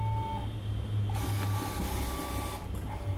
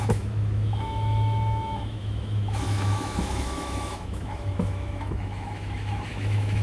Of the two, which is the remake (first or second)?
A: second